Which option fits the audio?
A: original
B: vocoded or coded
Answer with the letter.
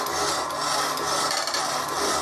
A